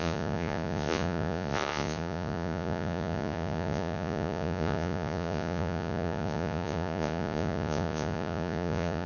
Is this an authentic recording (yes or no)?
no